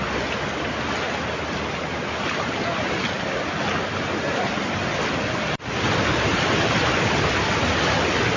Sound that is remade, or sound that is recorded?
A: recorded